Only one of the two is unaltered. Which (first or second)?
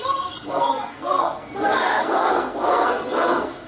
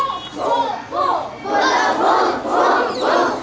second